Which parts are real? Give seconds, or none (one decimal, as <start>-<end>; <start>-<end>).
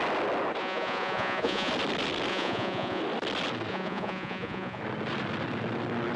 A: 0.0-0.6; 1.7-2.3; 3.0-3.7; 4.8-6.2